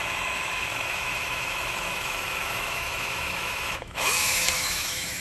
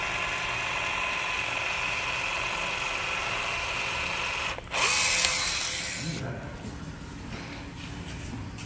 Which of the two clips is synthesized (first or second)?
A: first